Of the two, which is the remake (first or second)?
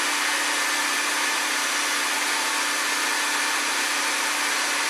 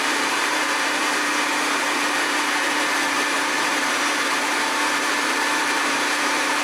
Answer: second